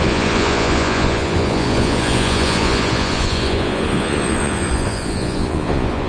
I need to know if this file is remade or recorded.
remade